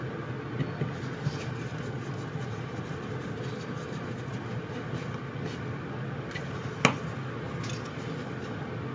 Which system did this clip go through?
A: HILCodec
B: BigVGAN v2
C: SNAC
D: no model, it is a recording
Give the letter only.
D